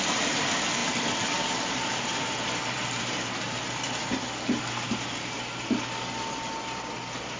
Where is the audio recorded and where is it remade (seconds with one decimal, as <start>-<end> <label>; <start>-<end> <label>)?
0.0-0.8 recorded; 0.8-4.6 remade; 4.6-7.4 recorded